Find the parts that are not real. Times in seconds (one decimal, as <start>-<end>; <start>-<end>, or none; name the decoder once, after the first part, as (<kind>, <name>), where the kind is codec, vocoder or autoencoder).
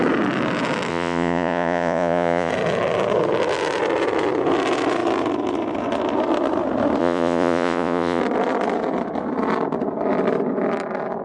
0.9-2.5 (vocoder, Vocos); 7.0-8.2